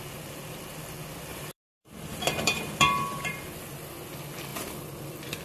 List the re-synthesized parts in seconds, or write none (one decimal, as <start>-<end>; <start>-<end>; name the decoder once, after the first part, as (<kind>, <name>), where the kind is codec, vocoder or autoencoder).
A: 1.3-3.3 (vocoder, BigVGAN v2)